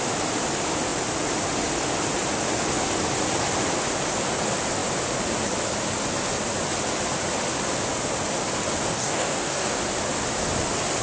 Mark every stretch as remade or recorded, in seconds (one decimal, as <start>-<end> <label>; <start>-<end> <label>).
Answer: 0.0-8.9 recorded; 8.9-9.8 remade; 9.8-11.0 recorded